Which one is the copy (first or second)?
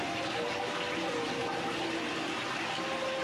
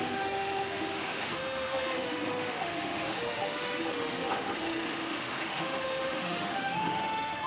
second